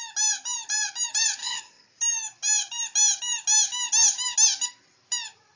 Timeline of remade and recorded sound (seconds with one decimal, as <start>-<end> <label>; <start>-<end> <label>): 0.0-1.4 recorded; 1.4-1.9 remade; 1.9-5.6 recorded